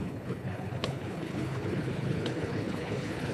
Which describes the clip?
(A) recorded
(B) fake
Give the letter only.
B